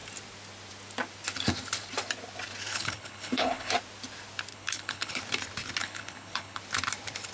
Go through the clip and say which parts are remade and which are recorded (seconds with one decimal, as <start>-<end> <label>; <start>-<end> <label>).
0.0-2.7 recorded; 2.7-3.7 remade; 3.7-4.5 recorded; 4.5-5.2 remade; 5.2-5.8 recorded; 5.8-6.6 remade; 6.6-7.3 recorded